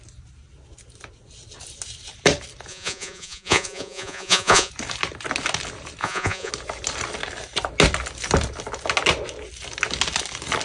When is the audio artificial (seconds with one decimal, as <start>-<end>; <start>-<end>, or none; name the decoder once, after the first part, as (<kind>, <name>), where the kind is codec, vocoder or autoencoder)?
2.7-4.7 (vocoder, Vocos); 6.0-6.5